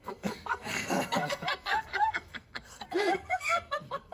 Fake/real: fake